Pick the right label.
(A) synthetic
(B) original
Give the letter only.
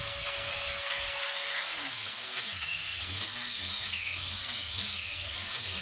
A